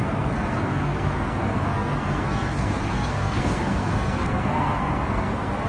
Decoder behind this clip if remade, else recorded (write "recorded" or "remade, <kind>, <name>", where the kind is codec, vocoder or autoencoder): remade, codec, SNAC